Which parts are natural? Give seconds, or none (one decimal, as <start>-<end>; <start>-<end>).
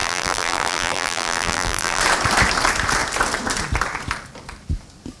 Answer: 2.0-5.2